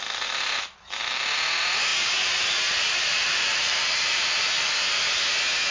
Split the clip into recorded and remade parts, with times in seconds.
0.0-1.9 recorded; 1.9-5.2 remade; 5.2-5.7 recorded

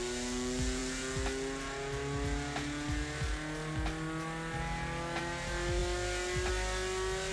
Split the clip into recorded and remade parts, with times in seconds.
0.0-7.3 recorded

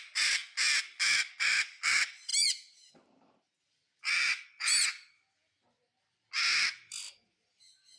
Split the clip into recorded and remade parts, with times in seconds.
0.0-0.4 remade; 0.4-1.3 recorded; 1.3-2.3 remade; 2.3-2.9 recorded; 2.9-3.8 remade; 3.8-6.8 recorded; 6.8-8.0 remade

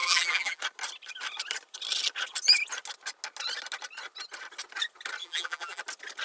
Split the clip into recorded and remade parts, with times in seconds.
0.0-0.6 remade; 0.6-5.2 recorded; 5.2-5.8 remade; 5.8-6.2 recorded

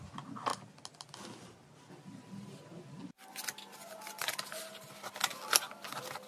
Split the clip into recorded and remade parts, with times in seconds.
0.0-6.3 recorded

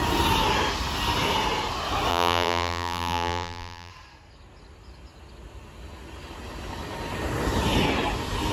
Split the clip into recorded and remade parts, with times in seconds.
0.0-2.1 recorded; 2.1-3.9 remade; 3.9-8.5 recorded